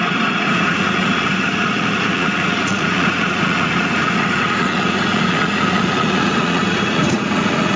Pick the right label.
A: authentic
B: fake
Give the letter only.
B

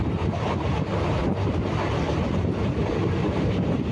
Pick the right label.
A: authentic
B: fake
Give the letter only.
A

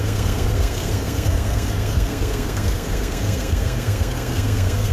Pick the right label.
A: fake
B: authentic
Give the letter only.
A